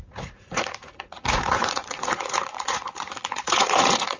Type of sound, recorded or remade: remade